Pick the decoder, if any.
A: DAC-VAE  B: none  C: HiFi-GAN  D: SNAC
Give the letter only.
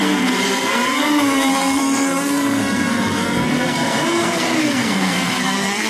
D